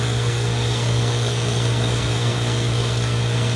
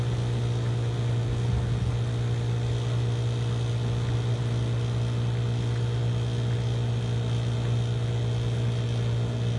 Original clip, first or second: second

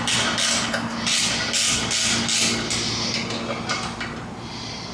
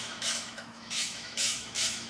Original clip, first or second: first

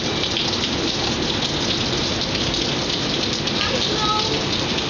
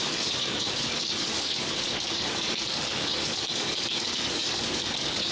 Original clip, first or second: first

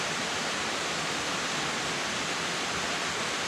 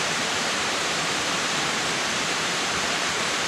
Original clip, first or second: first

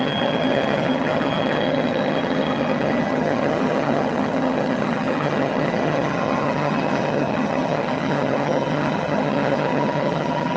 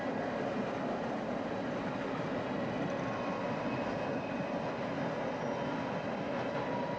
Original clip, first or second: second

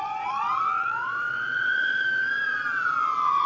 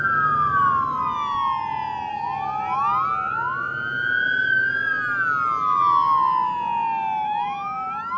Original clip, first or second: second